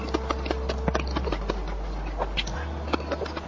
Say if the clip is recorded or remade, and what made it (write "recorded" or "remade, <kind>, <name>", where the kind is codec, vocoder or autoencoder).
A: recorded